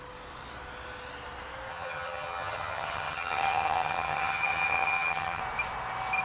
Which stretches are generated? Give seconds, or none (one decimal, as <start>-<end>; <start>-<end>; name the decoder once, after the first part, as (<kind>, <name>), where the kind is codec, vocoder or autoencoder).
1.7-5.4 (vocoder, HiFi-GAN)

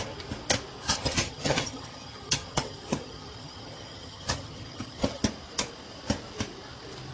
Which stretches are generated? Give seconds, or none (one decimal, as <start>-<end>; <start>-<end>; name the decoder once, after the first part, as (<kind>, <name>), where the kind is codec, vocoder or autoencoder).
0.9-5.2 (vocoder, HiFi-GAN)

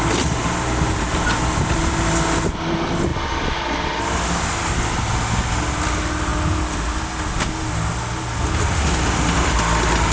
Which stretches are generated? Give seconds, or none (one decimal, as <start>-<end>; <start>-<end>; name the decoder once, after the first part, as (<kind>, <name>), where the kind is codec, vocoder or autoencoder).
none

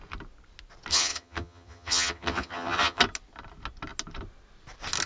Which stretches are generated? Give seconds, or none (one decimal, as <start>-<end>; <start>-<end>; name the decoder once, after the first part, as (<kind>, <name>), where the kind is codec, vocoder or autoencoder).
0.9-3.0 (vocoder, HiFi-GAN)

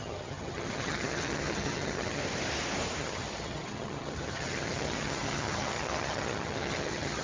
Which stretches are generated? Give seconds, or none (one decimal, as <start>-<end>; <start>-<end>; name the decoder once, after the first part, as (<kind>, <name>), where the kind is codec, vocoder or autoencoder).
0.0-2.2 (vocoder, HiFi-GAN); 3.0-7.2